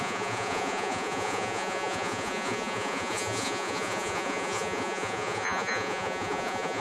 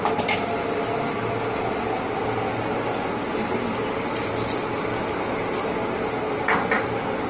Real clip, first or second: second